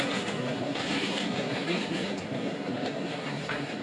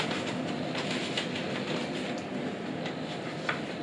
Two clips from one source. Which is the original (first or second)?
second